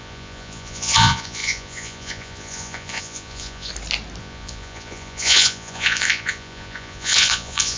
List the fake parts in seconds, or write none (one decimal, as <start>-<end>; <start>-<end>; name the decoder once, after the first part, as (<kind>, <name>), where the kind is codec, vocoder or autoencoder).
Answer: 0.0-3.7 (vocoder, Vocos); 4.2-7.8